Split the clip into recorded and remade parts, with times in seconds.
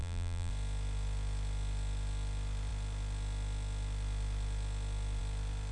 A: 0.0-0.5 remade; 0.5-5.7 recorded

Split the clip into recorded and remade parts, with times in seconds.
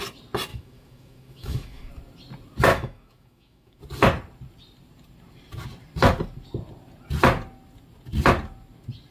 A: 0.0-0.5 recorded; 0.5-1.9 remade; 1.9-2.7 recorded; 2.7-3.8 remade; 3.8-9.1 recorded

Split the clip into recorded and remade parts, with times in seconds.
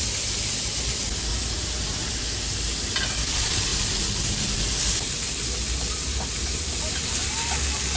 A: 0.0-1.3 recorded; 1.3-2.1 remade; 2.1-8.0 recorded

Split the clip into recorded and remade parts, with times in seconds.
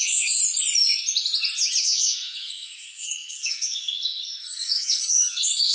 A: 0.0-0.4 remade; 0.4-1.8 recorded; 1.8-5.7 remade